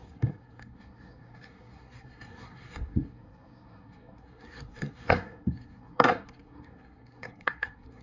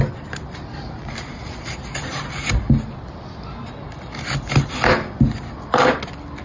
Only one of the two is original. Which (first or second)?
second